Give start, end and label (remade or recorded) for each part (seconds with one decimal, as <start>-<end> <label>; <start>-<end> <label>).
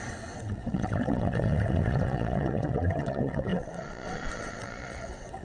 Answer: 0.0-5.4 remade